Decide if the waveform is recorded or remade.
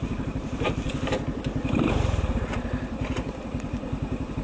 remade